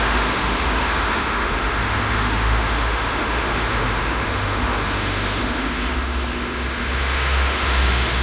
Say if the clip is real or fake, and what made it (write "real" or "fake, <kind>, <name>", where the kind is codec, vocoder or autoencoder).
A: fake, autoencoder, DAC-VAE